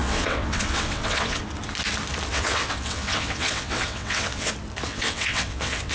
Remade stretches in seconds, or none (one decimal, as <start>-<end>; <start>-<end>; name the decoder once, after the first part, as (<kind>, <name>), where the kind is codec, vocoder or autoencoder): 0.0-1.4 (vocoder, WaveNeXt); 2.3-4.5; 4.9-5.9